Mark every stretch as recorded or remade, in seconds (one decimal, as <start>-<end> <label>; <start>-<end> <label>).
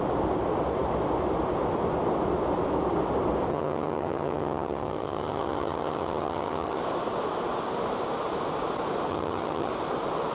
0.0-3.5 recorded; 3.5-6.8 remade; 6.8-9.1 recorded; 9.1-9.7 remade; 9.7-10.3 recorded